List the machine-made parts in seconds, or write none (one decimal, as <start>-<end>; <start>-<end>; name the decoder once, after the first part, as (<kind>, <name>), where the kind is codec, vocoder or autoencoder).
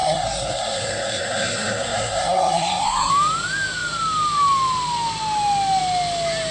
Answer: 0.0-3.1 (codec, SNAC)